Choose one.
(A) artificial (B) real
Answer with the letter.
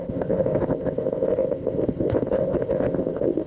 A